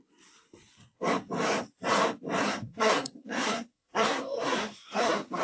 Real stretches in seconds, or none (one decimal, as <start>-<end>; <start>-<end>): 0.0-2.4